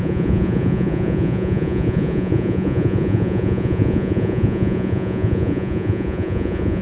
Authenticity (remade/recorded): remade